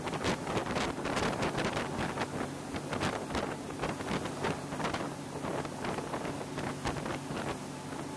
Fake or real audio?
real